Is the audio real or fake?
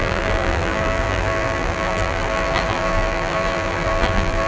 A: fake